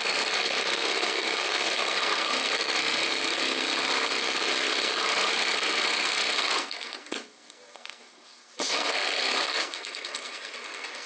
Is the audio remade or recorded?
remade